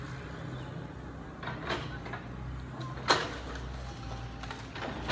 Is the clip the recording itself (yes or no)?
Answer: yes